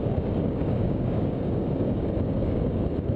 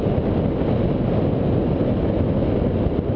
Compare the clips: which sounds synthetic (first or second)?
first